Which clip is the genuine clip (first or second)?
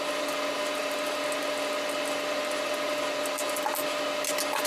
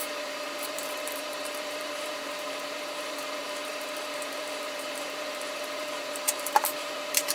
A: first